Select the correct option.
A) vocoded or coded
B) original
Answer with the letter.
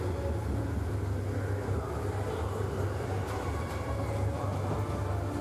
B